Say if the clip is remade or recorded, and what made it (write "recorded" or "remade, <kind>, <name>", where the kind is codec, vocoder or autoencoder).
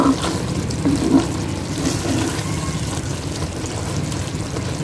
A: recorded